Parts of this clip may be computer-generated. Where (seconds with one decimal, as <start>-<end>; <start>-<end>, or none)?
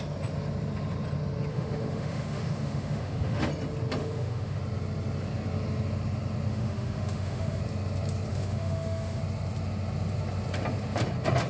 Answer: 1.5-3.5; 4.0-4.6; 6.5-7.6; 8.3-9.2